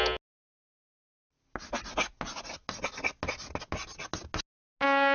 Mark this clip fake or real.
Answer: real